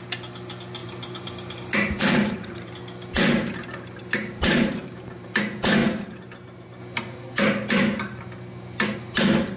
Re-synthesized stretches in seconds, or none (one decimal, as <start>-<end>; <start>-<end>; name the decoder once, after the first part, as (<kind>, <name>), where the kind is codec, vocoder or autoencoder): 0.8-2.7 (vocoder, BigVGAN v2); 4.0-5.3; 5.8-6.8